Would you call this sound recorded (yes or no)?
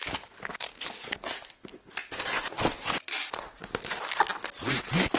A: yes